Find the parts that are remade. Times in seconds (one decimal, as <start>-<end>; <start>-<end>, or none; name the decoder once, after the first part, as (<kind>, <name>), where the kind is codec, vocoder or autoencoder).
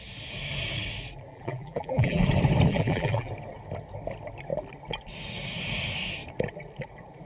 1.3-2.2 (vocoder, BigVGAN v2); 2.7-3.3